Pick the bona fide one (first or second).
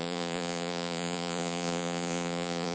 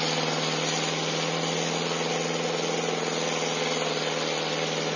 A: second